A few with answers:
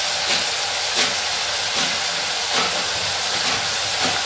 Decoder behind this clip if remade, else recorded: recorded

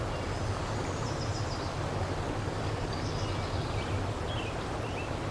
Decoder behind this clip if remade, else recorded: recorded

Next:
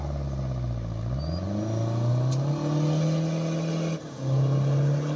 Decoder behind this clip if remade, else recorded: recorded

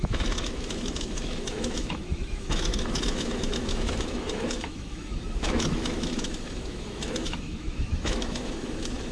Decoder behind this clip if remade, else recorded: remade, autoencoder, DAC-VAE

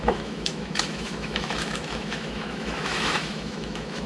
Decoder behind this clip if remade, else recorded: remade, autoencoder, DAC-VAE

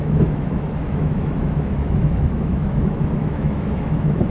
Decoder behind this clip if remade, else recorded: remade, autoencoder, DAC-VAE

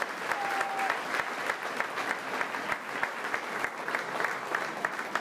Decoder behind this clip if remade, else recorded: recorded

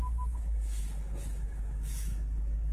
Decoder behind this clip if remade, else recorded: remade, autoencoder, DAC-VAE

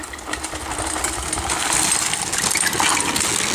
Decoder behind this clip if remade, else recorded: recorded